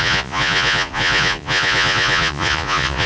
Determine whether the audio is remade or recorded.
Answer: remade